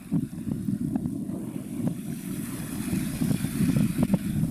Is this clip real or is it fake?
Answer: real